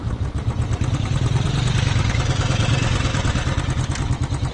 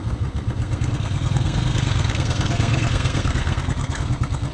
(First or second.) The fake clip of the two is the second